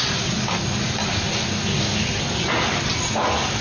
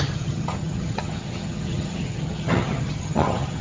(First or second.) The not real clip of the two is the second